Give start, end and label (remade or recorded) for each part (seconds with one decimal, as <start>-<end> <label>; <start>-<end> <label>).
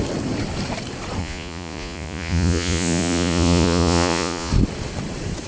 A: 0.0-1.2 recorded; 1.2-4.5 remade; 4.5-5.5 recorded